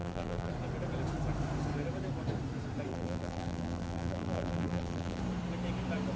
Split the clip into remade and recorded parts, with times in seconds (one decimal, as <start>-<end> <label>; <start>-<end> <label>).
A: 0.0-0.5 remade; 0.5-2.9 recorded; 2.9-5.2 remade; 5.2-6.2 recorded